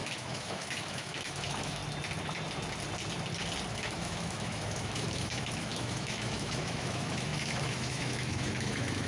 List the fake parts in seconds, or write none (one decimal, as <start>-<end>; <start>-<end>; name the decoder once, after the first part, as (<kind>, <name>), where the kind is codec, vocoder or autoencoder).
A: 0.0-1.8 (autoencoder, DAC-VAE); 3.7-9.1